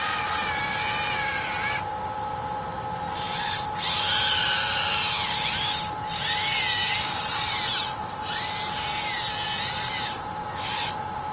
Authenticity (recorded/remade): recorded